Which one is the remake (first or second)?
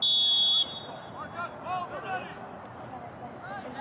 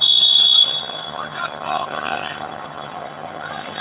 second